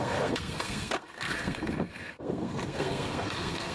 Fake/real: fake